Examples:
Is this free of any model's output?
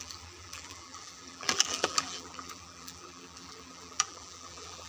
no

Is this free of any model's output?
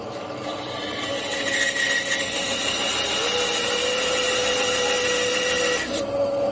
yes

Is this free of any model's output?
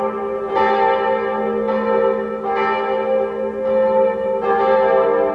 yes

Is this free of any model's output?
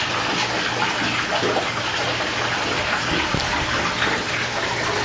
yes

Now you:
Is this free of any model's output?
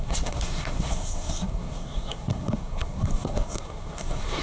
no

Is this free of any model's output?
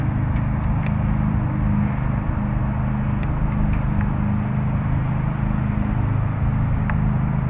yes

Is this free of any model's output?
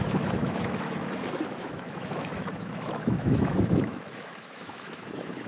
no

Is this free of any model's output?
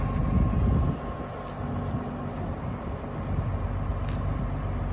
yes